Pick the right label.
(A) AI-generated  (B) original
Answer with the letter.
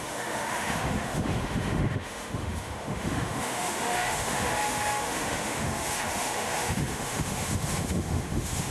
A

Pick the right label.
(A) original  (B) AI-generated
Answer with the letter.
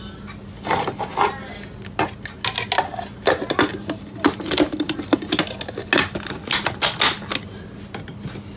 A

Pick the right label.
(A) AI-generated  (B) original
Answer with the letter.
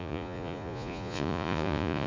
A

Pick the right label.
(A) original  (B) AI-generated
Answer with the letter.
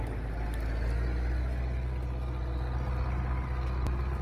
A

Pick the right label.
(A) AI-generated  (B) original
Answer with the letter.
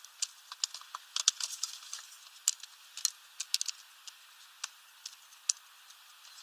B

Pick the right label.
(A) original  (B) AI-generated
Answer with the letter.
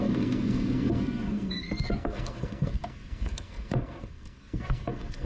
B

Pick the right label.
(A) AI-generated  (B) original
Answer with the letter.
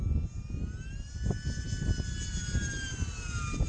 B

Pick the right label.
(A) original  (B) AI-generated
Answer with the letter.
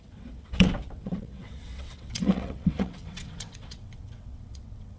B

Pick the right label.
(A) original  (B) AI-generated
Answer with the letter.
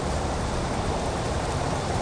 A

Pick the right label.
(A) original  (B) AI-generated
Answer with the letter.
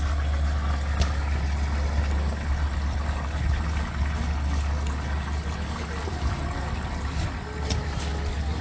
A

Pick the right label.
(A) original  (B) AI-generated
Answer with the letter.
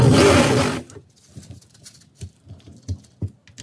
A